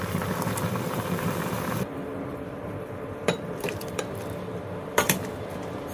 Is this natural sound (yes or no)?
no